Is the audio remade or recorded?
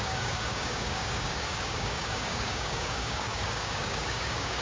remade